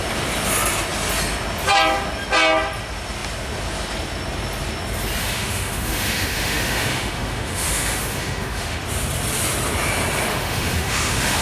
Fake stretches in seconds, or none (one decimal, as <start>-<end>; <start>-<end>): 5.2-8.8; 10.3-11.4